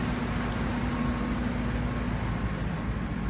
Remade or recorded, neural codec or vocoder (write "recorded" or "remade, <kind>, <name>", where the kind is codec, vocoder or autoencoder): recorded